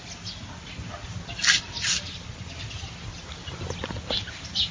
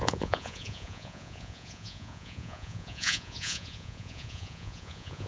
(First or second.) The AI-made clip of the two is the second